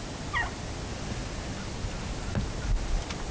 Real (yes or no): yes